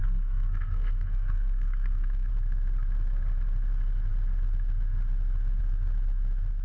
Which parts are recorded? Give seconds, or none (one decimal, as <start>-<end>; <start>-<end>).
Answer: 2.3-6.6